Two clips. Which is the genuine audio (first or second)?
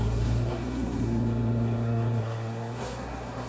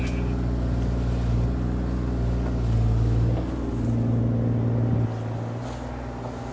second